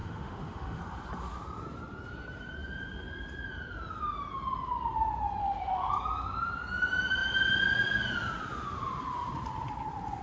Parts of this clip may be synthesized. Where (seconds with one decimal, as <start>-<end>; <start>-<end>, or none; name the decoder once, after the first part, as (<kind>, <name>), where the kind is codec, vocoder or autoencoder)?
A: 0.0-0.8 (autoencoder, DAC-VAE); 5.4-5.9